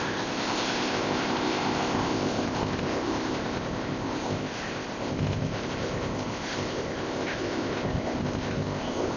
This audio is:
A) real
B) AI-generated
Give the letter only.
B